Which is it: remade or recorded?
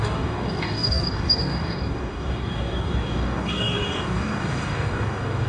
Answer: remade